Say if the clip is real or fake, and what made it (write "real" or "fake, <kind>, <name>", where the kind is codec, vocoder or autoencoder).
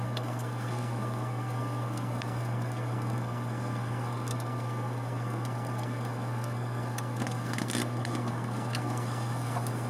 fake, codec, SNAC